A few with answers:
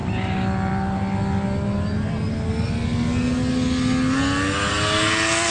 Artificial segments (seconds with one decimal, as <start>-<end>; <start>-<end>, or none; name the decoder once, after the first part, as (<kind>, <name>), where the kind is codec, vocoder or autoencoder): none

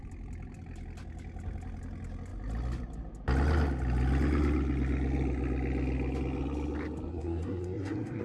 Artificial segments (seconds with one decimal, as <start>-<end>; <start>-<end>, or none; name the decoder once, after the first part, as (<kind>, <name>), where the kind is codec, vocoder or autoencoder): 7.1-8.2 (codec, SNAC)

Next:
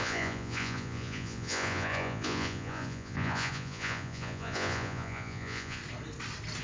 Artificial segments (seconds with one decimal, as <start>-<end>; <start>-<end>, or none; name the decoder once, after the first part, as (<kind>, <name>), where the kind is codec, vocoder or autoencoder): 0.0-5.8 (vocoder, Vocos)

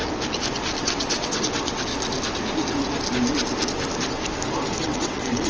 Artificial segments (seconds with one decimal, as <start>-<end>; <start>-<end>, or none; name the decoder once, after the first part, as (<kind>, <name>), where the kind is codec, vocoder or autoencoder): 0.8-1.9 (vocoder, WaveNeXt); 4.8-5.5